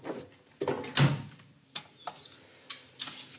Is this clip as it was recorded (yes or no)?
yes